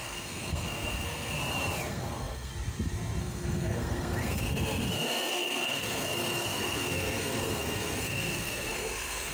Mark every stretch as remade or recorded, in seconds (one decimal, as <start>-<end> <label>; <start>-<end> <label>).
0.0-1.4 remade; 1.4-1.9 recorded; 1.9-2.5 remade; 2.5-3.2 recorded; 3.2-9.3 remade